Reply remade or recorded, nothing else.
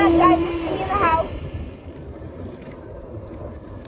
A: remade